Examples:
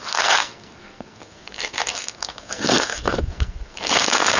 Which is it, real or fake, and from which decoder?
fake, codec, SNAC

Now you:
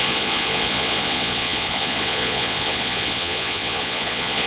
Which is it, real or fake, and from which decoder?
fake, vocoder, Vocos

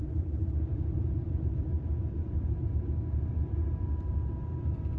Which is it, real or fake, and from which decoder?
fake, vocoder, BigVGAN v2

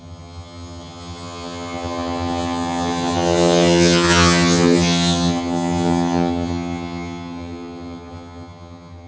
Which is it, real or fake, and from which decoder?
fake, vocoder, HiFi-GAN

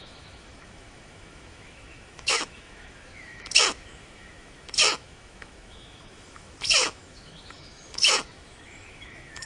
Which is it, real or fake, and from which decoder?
fake, autoencoder, DAC-VAE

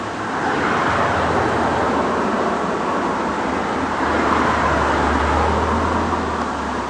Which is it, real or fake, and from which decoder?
real